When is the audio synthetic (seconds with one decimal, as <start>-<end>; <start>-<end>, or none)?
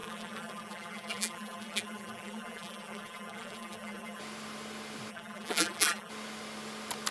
0.0-4.2; 5.1-6.1